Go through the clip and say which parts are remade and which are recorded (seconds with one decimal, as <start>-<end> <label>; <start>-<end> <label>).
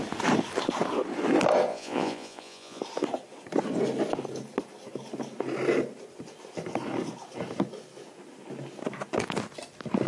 0.0-1.7 recorded; 1.7-2.8 remade; 2.8-10.1 recorded